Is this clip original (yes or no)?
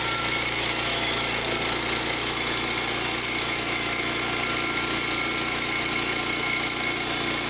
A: yes